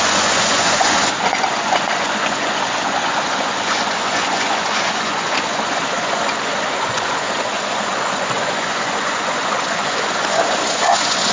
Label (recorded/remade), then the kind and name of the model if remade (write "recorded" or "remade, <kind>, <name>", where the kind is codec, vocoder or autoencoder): remade, vocoder, Vocos